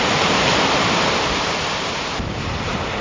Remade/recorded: remade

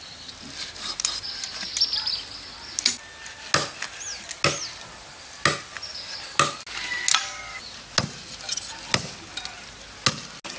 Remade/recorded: recorded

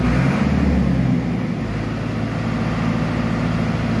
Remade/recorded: recorded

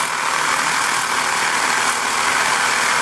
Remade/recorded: recorded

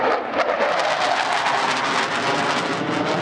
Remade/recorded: recorded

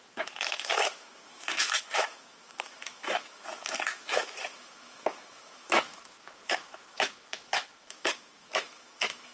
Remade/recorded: remade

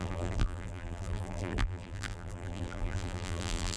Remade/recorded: remade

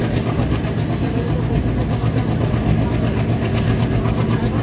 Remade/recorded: recorded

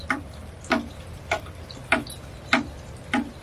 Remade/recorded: recorded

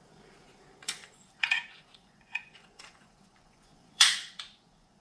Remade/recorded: remade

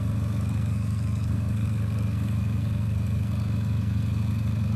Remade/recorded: remade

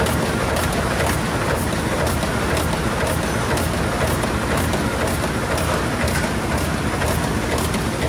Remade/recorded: recorded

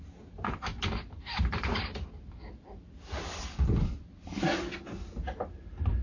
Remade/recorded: recorded